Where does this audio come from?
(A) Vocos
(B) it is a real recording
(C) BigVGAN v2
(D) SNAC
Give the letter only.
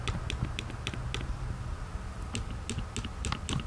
B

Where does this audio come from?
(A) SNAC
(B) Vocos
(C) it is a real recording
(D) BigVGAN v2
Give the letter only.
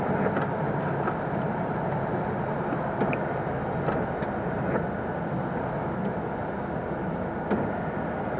C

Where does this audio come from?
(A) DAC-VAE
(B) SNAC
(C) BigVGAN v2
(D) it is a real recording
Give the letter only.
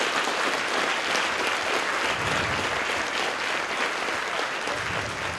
D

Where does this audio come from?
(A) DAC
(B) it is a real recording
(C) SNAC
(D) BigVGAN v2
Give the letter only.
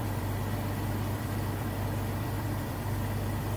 D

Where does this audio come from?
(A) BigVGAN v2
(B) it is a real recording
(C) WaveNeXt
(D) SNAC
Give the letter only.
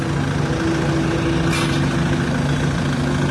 B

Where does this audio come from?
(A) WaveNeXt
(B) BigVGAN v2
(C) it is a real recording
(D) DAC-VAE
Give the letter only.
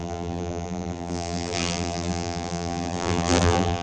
B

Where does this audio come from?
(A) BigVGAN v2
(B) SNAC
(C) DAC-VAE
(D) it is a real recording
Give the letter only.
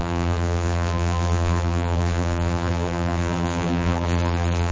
A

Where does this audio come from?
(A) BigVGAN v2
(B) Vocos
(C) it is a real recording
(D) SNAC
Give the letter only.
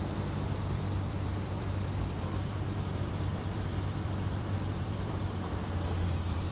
A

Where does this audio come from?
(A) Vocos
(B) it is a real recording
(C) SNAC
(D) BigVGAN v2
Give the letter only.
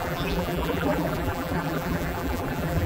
D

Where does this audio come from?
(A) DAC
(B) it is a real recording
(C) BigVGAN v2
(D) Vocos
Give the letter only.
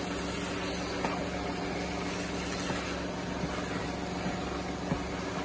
B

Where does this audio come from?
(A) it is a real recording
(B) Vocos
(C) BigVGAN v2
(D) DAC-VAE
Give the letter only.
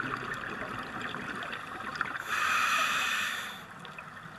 A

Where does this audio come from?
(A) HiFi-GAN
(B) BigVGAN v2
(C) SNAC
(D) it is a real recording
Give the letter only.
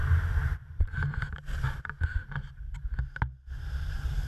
D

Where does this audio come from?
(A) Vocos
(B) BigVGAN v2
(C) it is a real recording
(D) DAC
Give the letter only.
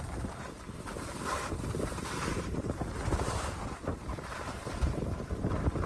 B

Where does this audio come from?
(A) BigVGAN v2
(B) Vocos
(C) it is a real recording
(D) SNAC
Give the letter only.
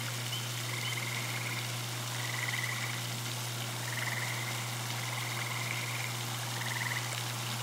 C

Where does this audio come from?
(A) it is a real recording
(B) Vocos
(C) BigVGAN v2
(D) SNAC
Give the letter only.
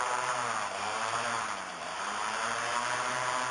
C